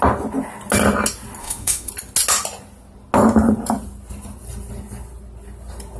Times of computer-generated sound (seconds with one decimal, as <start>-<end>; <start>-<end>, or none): 1.4-1.9